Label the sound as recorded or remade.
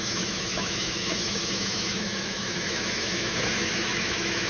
remade